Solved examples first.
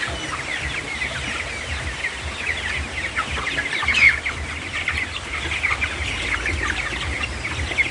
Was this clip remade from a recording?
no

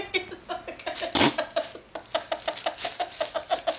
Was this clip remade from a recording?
no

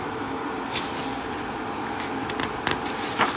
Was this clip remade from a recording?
no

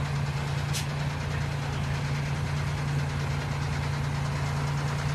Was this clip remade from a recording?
no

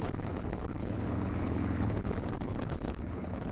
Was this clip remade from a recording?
yes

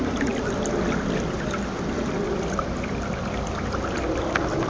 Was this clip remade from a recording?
no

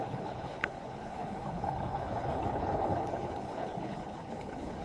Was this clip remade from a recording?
yes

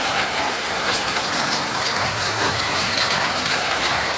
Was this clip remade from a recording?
yes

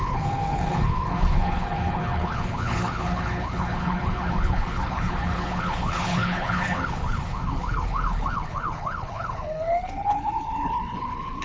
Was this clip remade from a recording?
yes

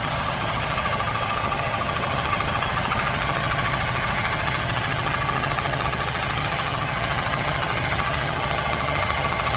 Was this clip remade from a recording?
yes